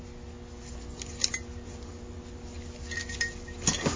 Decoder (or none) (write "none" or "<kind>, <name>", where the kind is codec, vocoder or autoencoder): none